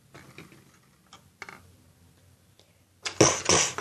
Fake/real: real